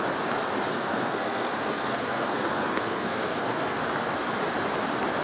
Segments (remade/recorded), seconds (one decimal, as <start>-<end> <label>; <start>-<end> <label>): 0.0-0.7 recorded; 0.7-3.8 remade; 3.8-5.2 recorded